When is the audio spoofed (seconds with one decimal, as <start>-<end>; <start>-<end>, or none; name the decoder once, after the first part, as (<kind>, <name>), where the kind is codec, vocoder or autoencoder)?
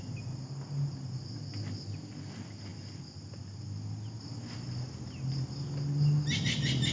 none